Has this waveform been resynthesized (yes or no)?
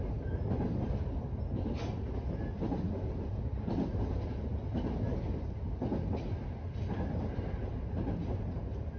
no